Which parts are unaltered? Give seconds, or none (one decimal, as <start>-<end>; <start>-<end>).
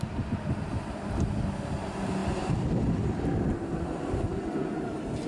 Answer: 0.0-5.3